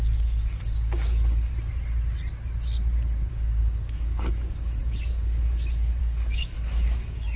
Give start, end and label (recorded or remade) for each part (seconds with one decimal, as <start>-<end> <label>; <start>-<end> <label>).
0.0-1.5 remade; 1.5-3.3 recorded; 3.3-7.4 remade